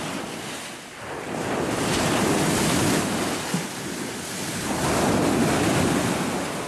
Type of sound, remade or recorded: recorded